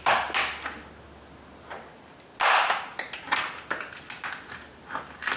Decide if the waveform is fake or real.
real